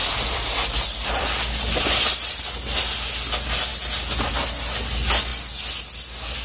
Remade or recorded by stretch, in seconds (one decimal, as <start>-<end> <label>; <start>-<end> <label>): 0.0-2.3 remade; 2.3-5.3 recorded; 5.3-5.8 remade; 5.8-6.4 recorded